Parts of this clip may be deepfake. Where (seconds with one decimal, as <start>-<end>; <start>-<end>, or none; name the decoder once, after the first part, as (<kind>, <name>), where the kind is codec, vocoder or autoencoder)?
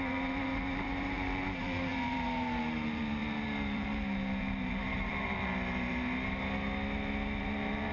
0.0-5.9 (vocoder, BigVGAN v2); 7.4-7.9